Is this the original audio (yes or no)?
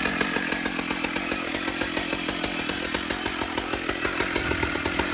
yes